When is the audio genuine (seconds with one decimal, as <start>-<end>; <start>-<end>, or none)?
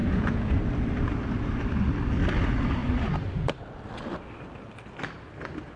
0.6-5.8